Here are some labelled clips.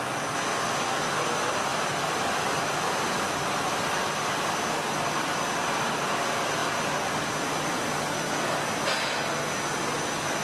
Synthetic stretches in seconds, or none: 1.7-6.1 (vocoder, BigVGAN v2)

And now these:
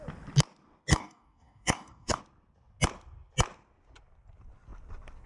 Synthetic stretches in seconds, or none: 0.9-2.2 (codec, DAC)